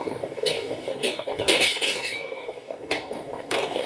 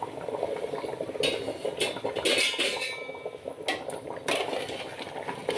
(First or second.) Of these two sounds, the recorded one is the second